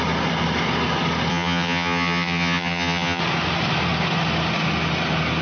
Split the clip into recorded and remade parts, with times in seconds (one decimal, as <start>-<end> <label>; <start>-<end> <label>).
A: 0.0-1.3 recorded; 1.3-3.2 remade; 3.2-5.4 recorded

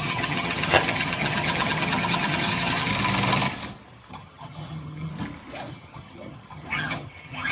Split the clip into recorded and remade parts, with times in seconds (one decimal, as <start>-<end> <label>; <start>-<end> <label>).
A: 0.0-2.9 remade; 2.9-4.1 recorded; 4.1-5.1 remade; 5.1-5.7 recorded; 5.7-7.5 remade

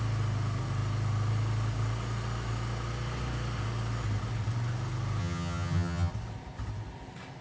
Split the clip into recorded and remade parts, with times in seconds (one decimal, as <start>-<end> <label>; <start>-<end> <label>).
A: 0.0-5.2 recorded; 5.2-6.1 remade; 6.1-7.4 recorded

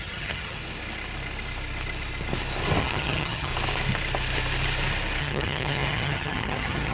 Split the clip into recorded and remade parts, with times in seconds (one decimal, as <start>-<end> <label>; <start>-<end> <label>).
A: 0.0-0.6 remade; 0.6-2.8 recorded; 2.8-3.5 remade; 3.5-5.2 recorded; 5.2-6.9 remade